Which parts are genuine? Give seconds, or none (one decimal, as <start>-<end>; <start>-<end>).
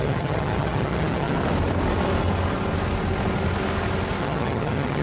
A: 1.4-4.2